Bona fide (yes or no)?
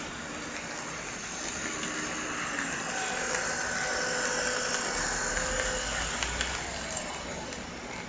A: yes